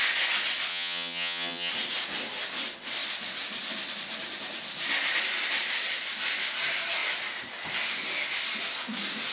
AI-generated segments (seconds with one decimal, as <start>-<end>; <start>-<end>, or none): 0.7-1.7